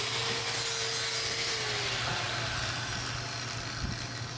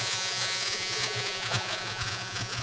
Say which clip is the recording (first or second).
first